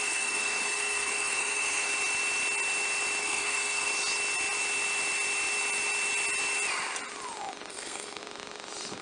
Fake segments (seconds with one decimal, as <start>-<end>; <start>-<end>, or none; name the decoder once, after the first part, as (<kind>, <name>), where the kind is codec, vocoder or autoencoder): 0.0-1.9 (codec, SNAC); 3.2-3.9; 7.7-8.2